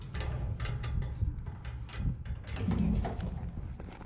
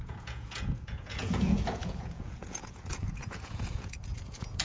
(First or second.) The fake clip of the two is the second